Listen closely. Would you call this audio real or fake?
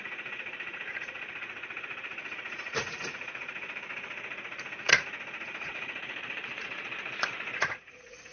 fake